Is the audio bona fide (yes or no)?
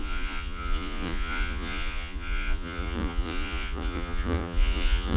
no